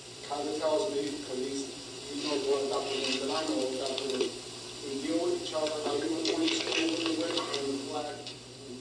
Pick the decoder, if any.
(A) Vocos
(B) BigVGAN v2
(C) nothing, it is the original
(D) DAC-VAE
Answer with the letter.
B